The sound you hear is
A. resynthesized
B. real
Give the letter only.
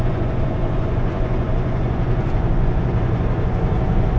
A